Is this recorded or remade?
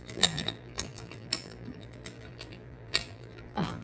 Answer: remade